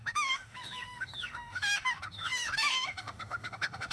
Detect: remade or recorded remade